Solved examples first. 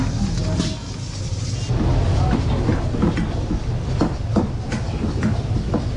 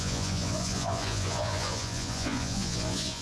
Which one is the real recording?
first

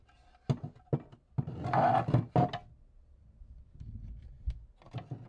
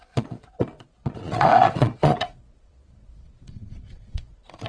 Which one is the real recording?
first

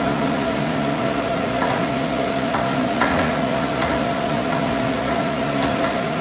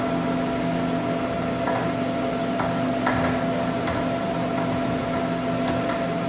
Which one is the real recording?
second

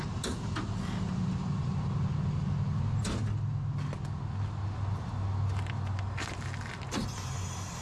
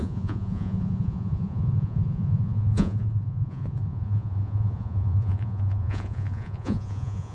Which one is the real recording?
first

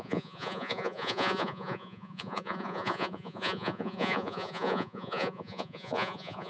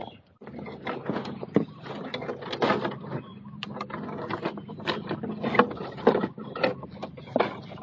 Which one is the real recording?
second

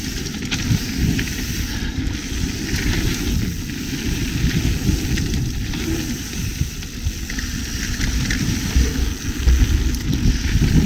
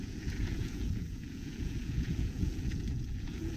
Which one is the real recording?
first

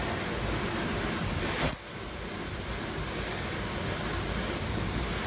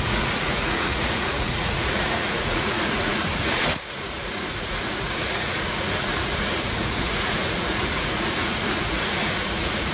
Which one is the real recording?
first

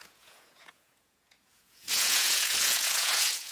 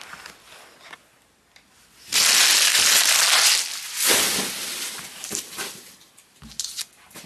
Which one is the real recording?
second